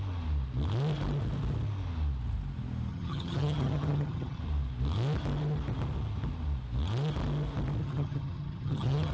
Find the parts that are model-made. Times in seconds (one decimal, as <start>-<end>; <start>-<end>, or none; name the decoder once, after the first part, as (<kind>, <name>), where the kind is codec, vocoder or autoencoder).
2.9-4.4 (vocoder, HiFi-GAN); 7.8-9.1